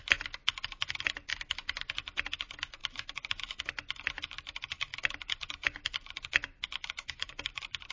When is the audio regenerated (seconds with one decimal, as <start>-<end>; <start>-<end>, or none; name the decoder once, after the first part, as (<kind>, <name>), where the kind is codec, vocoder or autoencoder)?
1.3-1.9 (vocoder, BigVGAN v2); 2.8-3.4; 4.9-7.3

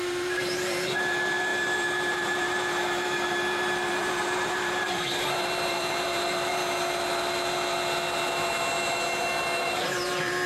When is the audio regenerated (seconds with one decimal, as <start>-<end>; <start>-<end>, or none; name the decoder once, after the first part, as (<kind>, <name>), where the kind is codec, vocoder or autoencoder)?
0.0-6.6 (vocoder, BigVGAN v2); 9.6-10.5

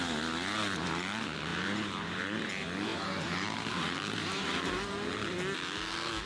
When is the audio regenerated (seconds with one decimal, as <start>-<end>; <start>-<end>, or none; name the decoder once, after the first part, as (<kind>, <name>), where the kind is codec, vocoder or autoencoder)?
1.5-2.5 (vocoder, BigVGAN v2); 2.9-4.6

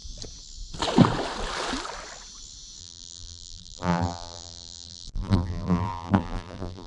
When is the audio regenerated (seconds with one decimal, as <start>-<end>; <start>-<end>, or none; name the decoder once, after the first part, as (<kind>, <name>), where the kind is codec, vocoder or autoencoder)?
2.8-6.9 (vocoder, BigVGAN v2)

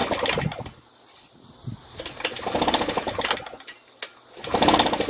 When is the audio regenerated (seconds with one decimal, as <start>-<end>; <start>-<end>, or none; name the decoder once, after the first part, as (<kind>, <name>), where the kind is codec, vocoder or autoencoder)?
1.8-3.4 (vocoder, BigVGAN v2)

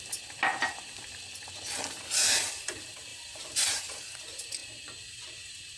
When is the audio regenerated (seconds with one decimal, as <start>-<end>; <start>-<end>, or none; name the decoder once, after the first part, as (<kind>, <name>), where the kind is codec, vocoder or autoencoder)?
0.5-1.2 (vocoder, BigVGAN v2); 3.1-3.8

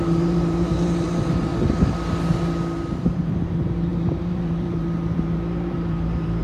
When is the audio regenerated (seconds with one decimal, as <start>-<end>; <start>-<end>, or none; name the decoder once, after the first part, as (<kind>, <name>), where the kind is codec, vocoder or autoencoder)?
0.0-1.5 (vocoder, BigVGAN v2); 3.0-6.4

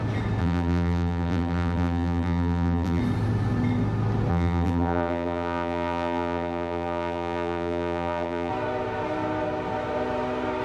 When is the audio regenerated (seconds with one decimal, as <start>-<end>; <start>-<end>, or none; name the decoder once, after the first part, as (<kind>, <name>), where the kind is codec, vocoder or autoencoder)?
0.4-3.0 (vocoder, BigVGAN v2); 4.3-8.5